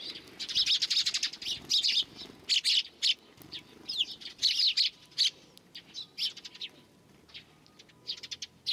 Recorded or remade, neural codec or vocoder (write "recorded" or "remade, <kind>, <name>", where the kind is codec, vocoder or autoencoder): recorded